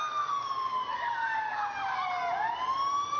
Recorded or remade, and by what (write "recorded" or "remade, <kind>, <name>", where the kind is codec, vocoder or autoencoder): recorded